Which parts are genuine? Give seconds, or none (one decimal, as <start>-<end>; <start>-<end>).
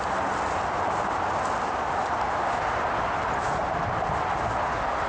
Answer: 0.0-5.1